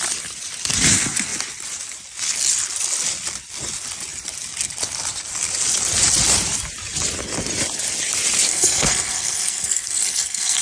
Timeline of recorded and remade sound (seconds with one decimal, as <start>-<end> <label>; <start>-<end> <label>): 0.0-8.5 recorded; 8.5-10.6 remade